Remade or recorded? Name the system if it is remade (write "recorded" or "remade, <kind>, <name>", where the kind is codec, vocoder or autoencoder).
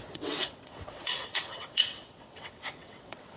remade, vocoder, WaveNeXt